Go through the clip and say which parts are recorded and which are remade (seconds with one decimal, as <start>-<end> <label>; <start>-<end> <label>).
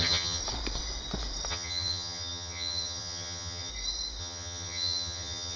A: 0.0-0.4 remade; 0.4-1.5 recorded; 1.5-3.7 remade; 3.7-4.2 recorded; 4.2-5.6 remade